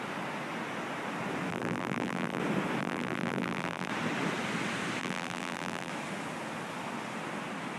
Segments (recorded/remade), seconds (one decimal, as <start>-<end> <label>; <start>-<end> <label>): 0.0-1.5 recorded; 1.5-2.4 remade; 2.4-2.8 recorded; 2.8-3.9 remade; 3.9-5.0 recorded; 5.0-5.9 remade; 5.9-7.8 recorded

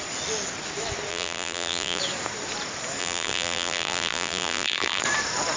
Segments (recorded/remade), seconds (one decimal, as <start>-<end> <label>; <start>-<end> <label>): 0.0-1.1 recorded; 1.1-2.0 remade; 2.0-3.0 recorded; 3.0-5.0 remade; 5.0-5.6 recorded

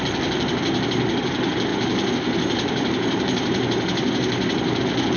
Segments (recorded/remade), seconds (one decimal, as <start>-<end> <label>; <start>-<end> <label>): 0.0-1.7 recorded; 1.7-4.8 remade; 4.8-5.2 recorded

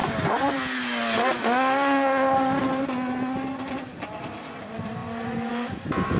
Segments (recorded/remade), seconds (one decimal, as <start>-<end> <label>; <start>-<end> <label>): 0.0-3.7 recorded; 3.7-6.2 remade

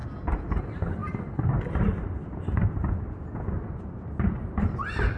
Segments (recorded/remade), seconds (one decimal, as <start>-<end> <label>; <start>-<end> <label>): 0.0-0.6 recorded; 0.6-1.0 remade; 1.0-4.1 recorded; 4.1-5.2 remade

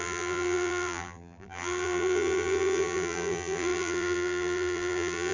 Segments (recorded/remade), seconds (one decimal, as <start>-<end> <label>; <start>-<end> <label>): 0.0-5.3 remade

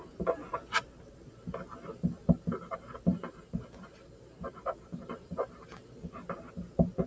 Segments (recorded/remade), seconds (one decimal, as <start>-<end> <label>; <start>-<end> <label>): 0.0-3.1 recorded; 3.1-5.7 remade; 5.7-7.1 recorded

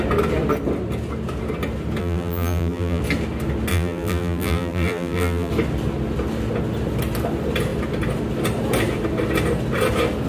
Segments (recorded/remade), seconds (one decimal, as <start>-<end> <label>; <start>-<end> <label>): 0.0-2.0 recorded; 2.0-3.0 remade; 3.0-3.7 recorded; 3.7-5.5 remade; 5.5-10.3 recorded